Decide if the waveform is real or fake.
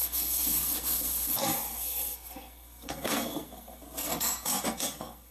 fake